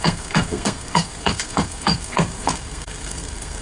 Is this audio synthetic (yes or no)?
yes